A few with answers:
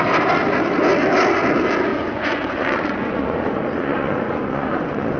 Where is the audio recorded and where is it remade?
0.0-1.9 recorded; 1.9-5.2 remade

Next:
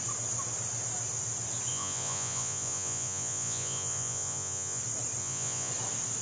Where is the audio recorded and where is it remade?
0.0-1.7 recorded; 1.7-4.8 remade; 4.8-5.2 recorded; 5.2-5.7 remade; 5.7-6.2 recorded

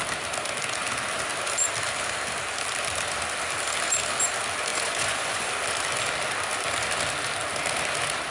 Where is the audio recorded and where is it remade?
0.0-4.7 recorded; 4.7-5.5 remade; 5.5-8.3 recorded

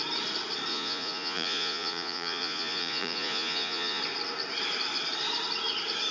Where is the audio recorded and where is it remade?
0.0-0.7 recorded; 0.7-4.0 remade; 4.0-6.1 recorded

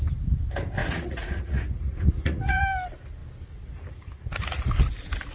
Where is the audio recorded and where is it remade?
0.0-0.8 recorded; 0.8-2.6 remade; 2.6-5.3 recorded

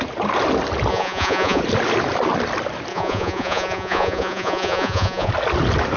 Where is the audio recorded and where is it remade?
0.0-0.9 recorded; 0.9-1.6 remade; 1.6-2.9 recorded; 2.9-5.3 remade; 5.3-6.0 recorded

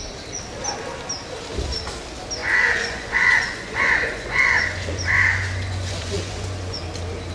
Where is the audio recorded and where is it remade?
0.0-2.4 recorded; 2.4-6.8 remade; 6.8-7.3 recorded